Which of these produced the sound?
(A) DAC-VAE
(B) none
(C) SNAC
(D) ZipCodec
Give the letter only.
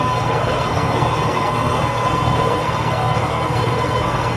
C